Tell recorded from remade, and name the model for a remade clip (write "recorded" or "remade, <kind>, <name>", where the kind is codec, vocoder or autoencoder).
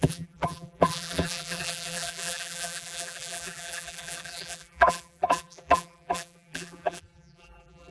remade, vocoder, BigVGAN v2